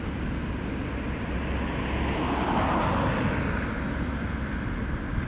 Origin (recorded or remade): recorded